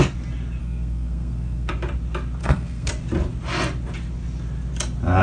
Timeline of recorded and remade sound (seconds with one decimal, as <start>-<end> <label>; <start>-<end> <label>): 0.0-0.6 recorded; 0.6-1.7 remade; 1.7-2.4 recorded; 2.4-2.9 remade; 2.9-5.2 recorded